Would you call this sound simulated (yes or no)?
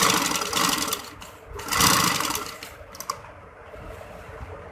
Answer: no